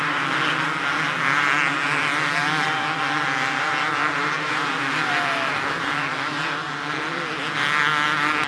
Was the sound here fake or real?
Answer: real